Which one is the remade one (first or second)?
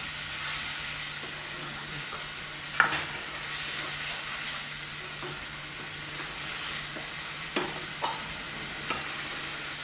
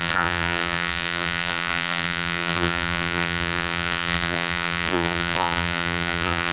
second